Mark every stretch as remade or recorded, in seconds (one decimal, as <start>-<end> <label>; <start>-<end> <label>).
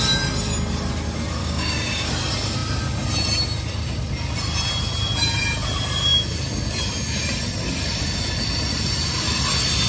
0.0-1.4 recorded; 1.4-2.1 remade; 2.1-9.9 recorded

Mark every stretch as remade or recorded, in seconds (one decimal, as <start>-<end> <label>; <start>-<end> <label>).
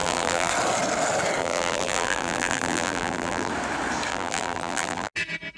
0.0-0.5 remade; 0.5-1.4 recorded; 1.4-3.5 remade; 3.5-4.1 recorded; 4.1-5.1 remade; 5.1-5.6 recorded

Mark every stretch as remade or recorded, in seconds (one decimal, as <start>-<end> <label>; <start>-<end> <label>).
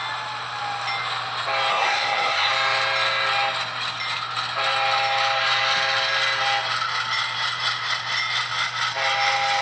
0.0-1.7 recorded; 1.7-2.5 remade; 2.5-9.6 recorded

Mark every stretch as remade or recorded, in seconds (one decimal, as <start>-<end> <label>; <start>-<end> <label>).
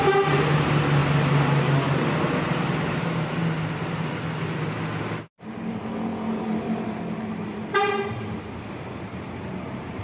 0.0-1.0 remade; 1.0-5.4 recorded; 5.4-6.1 remade; 6.1-7.1 recorded; 7.1-10.0 remade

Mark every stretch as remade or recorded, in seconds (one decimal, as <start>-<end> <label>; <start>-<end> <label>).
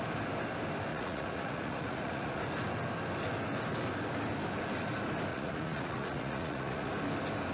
0.0-0.9 recorded; 0.9-2.4 remade; 2.4-5.3 recorded; 5.3-6.9 remade; 6.9-7.5 recorded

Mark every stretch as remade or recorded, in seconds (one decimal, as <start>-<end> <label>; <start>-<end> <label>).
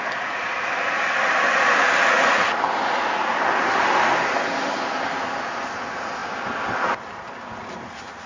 0.0-8.3 recorded